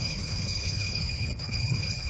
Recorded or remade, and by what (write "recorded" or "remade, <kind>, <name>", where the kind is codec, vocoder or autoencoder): remade, codec, HILCodec